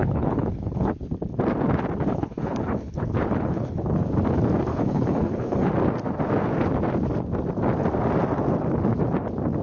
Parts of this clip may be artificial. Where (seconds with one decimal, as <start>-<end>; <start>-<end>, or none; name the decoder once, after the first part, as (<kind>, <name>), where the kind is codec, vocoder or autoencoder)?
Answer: 0.0-0.9 (codec, HILCodec); 2.1-3.9; 4.7-5.7